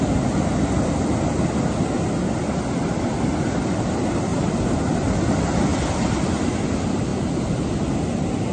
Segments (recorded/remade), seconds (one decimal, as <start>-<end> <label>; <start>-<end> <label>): 0.0-4.3 recorded; 4.3-4.8 remade; 4.8-8.5 recorded